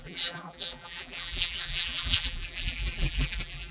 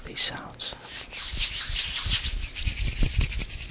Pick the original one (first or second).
second